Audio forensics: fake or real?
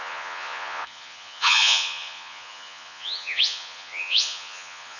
fake